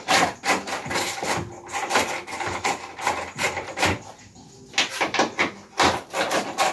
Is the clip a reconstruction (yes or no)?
no